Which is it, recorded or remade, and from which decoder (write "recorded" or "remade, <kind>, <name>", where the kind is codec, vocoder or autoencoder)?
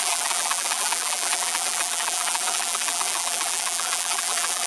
remade, vocoder, BigVGAN v2